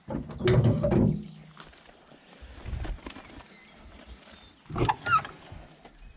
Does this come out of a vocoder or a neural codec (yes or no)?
no